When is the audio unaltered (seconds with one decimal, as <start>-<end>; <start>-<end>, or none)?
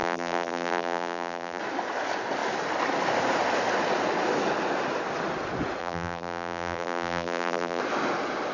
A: 1.6-5.8; 7.8-8.5